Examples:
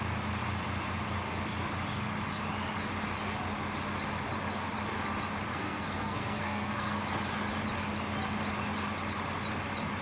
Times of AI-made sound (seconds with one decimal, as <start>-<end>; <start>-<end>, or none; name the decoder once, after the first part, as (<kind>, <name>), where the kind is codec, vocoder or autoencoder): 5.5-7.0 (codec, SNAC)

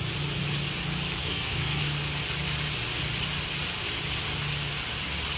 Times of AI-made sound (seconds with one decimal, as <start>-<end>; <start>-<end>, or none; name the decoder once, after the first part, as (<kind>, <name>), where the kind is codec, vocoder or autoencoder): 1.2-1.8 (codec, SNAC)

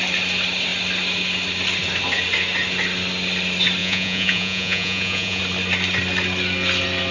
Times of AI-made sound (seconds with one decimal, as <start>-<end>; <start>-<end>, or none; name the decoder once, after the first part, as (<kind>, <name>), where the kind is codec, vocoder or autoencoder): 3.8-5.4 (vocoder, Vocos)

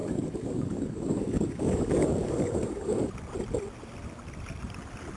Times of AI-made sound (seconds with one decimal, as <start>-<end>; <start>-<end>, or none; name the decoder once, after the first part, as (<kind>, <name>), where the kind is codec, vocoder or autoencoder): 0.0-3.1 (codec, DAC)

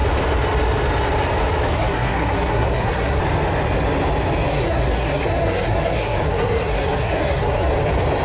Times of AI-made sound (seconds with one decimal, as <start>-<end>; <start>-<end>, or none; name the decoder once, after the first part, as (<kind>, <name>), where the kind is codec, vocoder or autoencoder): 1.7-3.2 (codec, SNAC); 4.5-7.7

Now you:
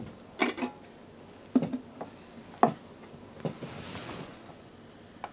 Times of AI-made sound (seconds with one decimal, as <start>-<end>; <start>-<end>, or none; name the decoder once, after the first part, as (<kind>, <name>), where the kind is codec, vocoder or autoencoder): 4.0-4.8 (vocoder, Vocos)

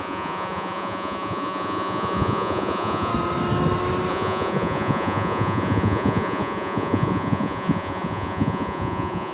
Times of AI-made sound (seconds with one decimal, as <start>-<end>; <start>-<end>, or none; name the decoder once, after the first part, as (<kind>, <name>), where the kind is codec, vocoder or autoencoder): 0.0-3.1 (vocoder, Vocos); 4.1-9.3

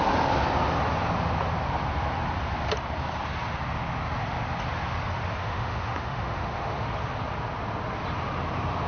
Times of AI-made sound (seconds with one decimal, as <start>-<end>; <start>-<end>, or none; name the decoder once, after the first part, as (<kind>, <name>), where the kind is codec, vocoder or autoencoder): 5.4-6.9 (autoencoder, DAC-VAE)